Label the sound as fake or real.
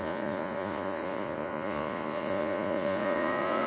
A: fake